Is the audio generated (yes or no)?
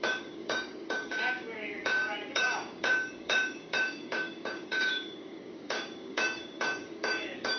yes